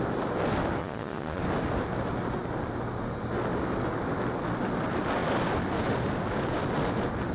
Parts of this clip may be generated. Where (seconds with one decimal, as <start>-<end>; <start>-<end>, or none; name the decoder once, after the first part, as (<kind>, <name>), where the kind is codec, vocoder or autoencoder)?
0.8-1.4 (vocoder, Vocos)